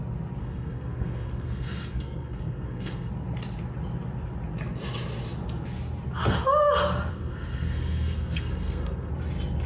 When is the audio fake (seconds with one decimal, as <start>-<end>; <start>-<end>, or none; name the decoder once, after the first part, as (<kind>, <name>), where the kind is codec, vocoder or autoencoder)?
0.4-3.1 (codec, SNAC); 7.1-9.1